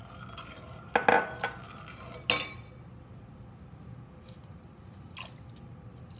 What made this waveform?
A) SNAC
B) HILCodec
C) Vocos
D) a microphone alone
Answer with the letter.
D